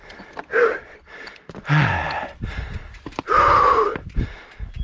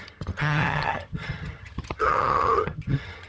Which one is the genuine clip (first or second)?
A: first